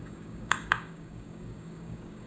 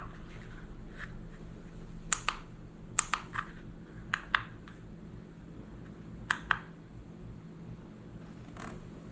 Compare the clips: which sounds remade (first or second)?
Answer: first